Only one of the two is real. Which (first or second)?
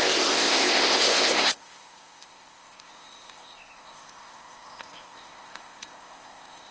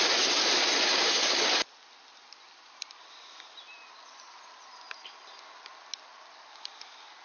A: second